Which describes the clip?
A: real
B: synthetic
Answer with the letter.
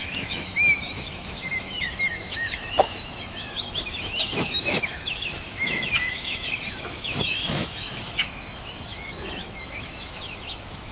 B